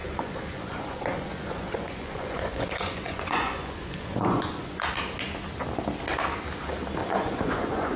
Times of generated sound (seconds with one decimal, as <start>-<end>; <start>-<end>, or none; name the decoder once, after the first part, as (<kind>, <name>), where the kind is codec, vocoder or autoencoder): 0.0-4.8 (vocoder, Vocos); 7.0-8.0